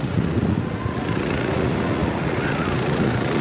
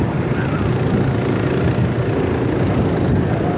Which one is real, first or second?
second